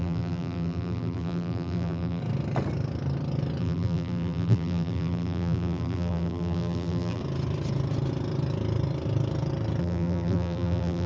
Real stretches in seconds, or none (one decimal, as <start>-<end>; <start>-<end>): 2.2-3.6; 7.2-9.8